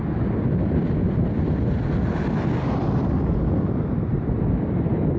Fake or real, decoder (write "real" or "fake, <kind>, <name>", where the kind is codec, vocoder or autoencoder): real